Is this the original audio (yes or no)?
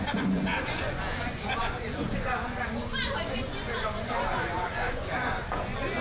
no